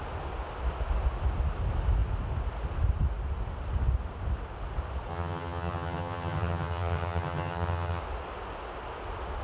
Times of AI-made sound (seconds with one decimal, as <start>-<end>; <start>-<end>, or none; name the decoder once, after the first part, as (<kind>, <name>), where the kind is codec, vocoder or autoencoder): 5.1-8.0 (vocoder, HiFi-GAN)